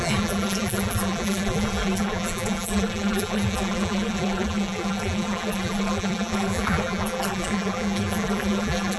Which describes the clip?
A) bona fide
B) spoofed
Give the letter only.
B